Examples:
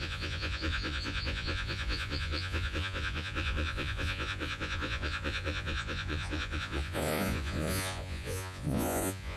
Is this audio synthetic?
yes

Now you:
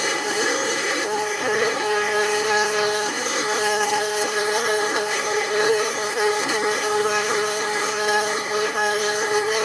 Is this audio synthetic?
yes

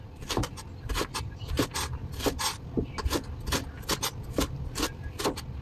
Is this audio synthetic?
no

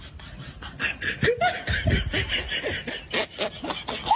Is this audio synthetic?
no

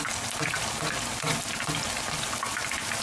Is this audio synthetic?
no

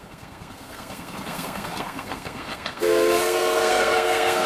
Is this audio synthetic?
yes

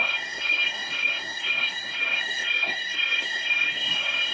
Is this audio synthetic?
yes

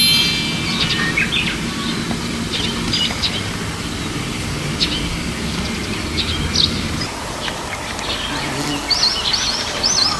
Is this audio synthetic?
no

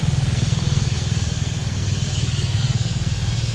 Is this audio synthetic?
yes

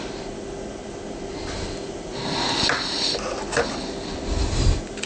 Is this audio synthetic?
no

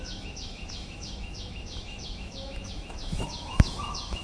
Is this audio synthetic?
yes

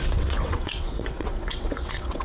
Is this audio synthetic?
yes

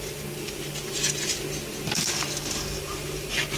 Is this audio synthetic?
no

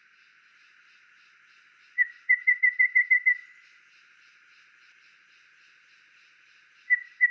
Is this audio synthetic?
no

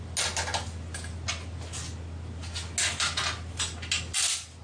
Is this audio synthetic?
no